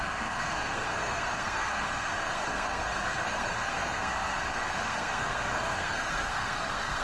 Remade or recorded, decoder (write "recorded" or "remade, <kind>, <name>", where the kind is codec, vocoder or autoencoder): remade, codec, SNAC